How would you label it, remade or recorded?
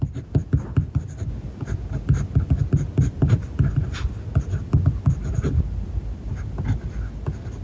recorded